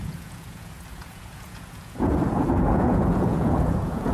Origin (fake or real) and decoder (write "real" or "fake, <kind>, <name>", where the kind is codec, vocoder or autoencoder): fake, vocoder, Vocos